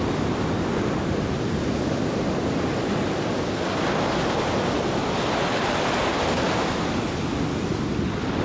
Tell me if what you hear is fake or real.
real